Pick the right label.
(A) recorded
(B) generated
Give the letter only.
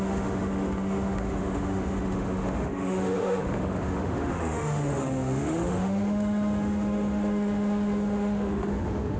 B